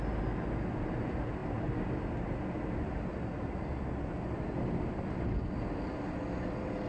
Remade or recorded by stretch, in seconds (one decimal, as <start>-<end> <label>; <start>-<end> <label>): 0.0-6.9 recorded